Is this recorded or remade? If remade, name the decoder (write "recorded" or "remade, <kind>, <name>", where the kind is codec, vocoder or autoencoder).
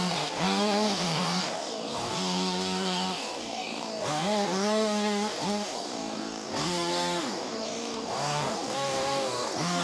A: remade, codec, DAC